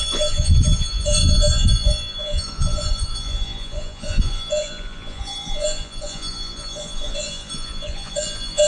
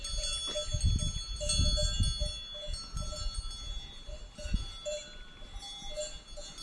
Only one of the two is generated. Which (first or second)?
first